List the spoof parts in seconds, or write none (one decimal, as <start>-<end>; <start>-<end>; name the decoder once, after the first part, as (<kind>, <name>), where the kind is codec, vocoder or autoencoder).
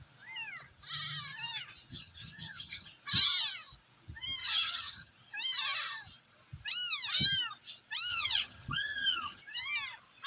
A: 1.9-2.9 (vocoder, HiFi-GAN); 4.4-5.1; 8.1-9.4